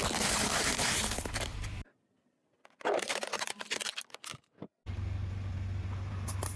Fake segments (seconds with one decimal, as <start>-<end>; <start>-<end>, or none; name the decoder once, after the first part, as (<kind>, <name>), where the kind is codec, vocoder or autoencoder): 0.0-1.0 (vocoder, BigVGAN v2); 1.5-3.5; 3.9-4.4

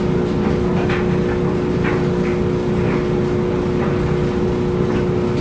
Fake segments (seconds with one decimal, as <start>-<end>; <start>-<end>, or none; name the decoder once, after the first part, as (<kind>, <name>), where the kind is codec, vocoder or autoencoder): none

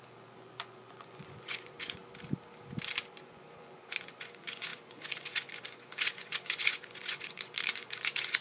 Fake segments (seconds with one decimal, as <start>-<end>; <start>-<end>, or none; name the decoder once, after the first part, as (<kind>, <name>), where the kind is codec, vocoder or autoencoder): 0.0-2.0 (vocoder, Vocos); 3.2-8.4